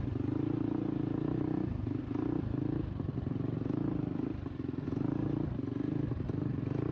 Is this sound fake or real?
real